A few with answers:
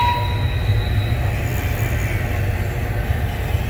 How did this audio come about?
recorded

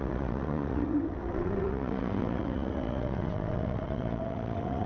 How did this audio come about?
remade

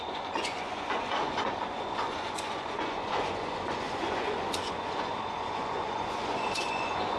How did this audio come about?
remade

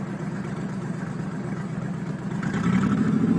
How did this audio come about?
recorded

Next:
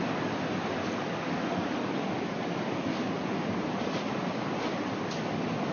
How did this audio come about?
recorded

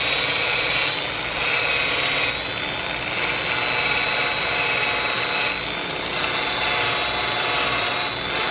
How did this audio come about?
recorded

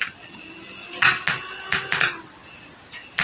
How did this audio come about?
recorded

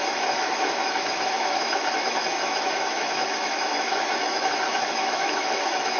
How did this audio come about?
remade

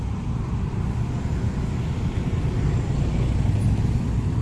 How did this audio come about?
recorded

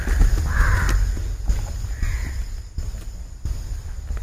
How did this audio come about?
recorded